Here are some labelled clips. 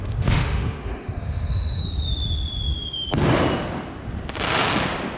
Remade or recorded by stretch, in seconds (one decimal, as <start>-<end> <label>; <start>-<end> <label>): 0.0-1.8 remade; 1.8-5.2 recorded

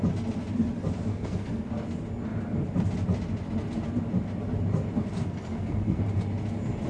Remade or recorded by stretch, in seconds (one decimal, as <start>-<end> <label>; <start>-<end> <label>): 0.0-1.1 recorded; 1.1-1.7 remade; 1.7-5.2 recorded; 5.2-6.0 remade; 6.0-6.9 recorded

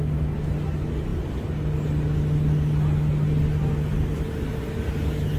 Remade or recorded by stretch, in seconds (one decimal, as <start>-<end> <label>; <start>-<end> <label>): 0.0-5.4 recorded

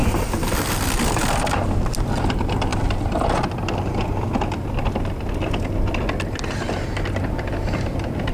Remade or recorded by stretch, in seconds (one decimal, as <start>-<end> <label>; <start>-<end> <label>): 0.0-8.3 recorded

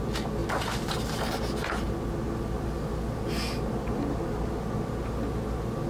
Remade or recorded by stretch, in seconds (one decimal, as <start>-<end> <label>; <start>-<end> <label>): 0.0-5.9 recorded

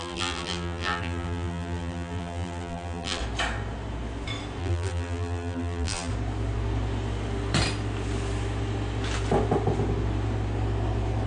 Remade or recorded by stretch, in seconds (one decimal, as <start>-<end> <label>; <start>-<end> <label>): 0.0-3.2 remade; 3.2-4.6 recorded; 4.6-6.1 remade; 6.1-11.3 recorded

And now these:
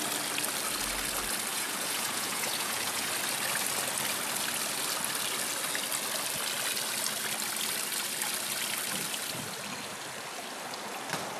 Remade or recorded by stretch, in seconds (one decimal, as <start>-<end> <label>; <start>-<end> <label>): 0.0-1.5 recorded; 1.5-3.1 remade; 3.1-11.4 recorded

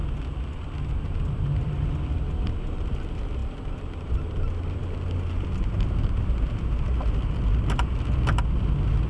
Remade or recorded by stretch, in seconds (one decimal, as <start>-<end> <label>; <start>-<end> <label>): 0.0-1.9 remade; 1.9-3.4 recorded; 3.4-4.8 remade; 4.8-9.1 recorded